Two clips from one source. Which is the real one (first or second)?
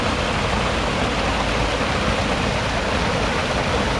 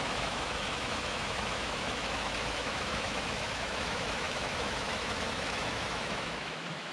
first